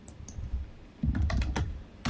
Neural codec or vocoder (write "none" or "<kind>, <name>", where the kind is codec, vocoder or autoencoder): none